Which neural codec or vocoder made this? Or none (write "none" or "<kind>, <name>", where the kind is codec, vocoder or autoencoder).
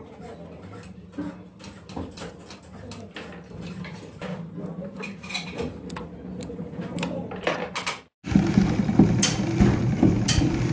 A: none